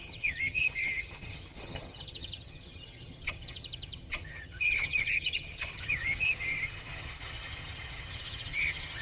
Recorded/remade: remade